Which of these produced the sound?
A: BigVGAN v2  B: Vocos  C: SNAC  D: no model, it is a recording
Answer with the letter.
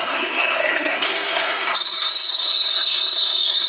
C